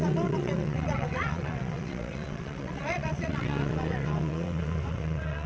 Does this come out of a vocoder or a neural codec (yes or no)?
yes